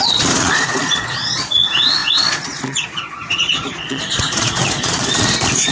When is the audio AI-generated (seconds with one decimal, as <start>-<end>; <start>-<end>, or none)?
0.0-5.7